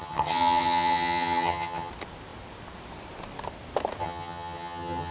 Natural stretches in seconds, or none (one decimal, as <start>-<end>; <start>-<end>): 1.9-4.0

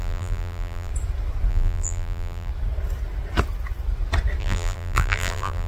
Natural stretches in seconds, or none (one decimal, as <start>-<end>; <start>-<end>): 0.9-1.5; 2.5-4.4

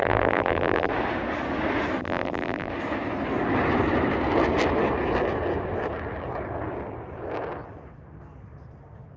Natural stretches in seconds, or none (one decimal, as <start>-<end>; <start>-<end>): 0.9-2.0; 2.7-9.2

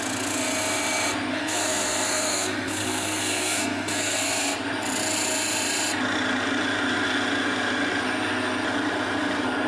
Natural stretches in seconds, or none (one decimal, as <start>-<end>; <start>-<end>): 0.0-1.3; 4.2-9.7

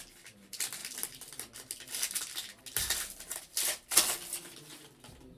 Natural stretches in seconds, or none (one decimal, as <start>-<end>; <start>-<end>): 0.0-5.4